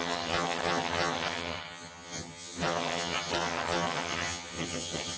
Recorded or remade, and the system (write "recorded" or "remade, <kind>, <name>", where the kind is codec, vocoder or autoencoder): remade, vocoder, HiFi-GAN